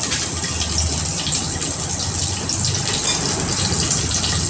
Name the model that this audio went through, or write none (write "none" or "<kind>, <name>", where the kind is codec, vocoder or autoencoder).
none